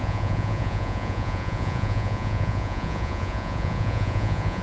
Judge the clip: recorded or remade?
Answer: remade